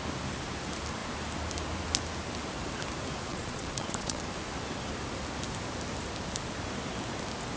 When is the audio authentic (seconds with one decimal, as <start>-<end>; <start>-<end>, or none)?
0.0-3.3; 4.2-7.6